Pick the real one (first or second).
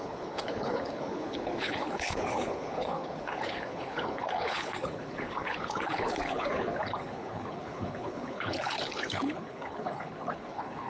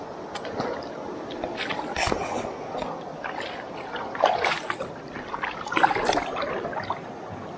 second